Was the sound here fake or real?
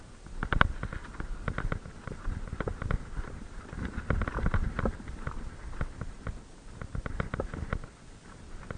real